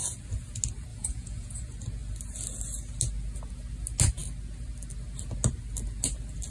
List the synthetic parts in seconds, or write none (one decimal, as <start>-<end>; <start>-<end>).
0.9-1.6